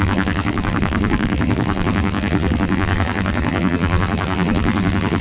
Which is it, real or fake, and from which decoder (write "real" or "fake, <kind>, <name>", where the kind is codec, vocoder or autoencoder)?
fake, vocoder, BigVGAN v2